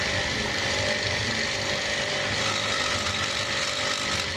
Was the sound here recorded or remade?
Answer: recorded